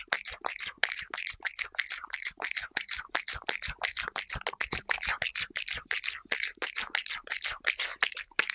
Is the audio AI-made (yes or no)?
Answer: no